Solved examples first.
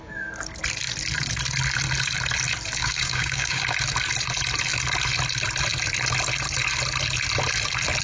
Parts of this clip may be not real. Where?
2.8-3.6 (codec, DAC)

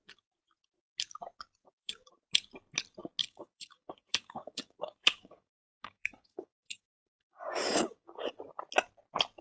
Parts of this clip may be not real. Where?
1.6-2.1 (codec, DAC); 3.2-8.3

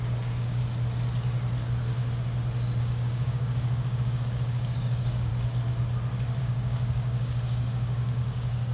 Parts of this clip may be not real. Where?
0.0-0.6 (codec, DAC); 2.8-5.3; 6.4-8.7

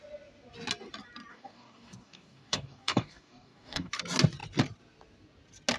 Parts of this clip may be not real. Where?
1.3-3.9 (codec, DAC)